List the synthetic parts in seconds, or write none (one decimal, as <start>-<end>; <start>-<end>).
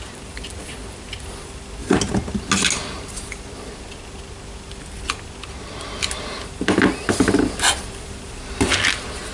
none